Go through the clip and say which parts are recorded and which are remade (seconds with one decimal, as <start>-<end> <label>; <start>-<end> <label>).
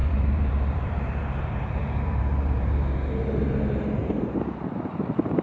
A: 0.0-3.2 remade; 3.2-4.0 recorded; 4.0-5.0 remade; 5.0-5.4 recorded